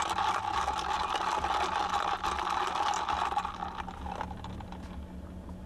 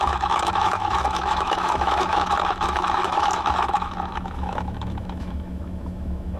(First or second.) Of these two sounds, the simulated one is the second